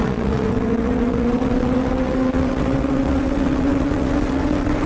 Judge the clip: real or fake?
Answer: fake